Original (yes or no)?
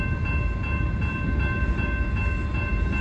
yes